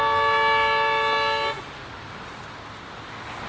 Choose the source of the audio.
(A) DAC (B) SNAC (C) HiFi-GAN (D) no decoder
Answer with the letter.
D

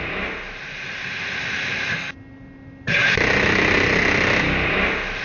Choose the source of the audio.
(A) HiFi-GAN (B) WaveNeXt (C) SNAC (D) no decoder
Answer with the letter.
D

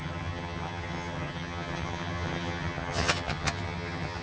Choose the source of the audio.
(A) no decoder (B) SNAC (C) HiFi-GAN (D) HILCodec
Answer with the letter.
C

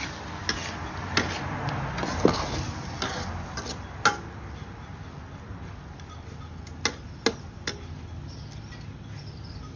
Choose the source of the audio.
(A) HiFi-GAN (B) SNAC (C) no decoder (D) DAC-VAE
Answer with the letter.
C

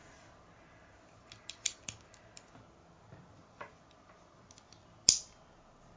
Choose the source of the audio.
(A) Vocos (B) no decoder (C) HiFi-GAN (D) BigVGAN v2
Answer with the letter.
B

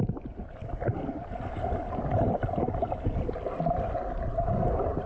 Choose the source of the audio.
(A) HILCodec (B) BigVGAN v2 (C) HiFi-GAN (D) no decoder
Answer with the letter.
D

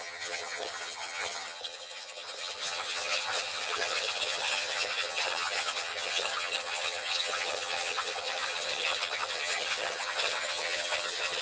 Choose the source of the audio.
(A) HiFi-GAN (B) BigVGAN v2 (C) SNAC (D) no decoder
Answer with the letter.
A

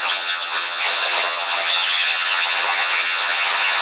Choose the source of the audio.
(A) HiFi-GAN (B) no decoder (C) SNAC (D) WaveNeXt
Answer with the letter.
A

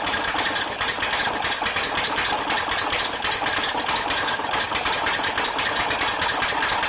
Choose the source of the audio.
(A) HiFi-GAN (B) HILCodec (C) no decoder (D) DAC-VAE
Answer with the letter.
C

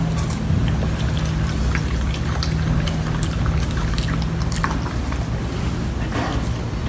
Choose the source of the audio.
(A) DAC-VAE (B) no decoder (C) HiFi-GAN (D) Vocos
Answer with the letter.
B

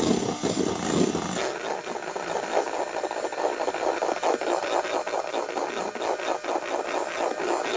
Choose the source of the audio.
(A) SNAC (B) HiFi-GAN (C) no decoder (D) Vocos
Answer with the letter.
C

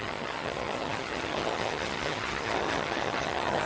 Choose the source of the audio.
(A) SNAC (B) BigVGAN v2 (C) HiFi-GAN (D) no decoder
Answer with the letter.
C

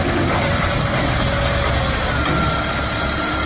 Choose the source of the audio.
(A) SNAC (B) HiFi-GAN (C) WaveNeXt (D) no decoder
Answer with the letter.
D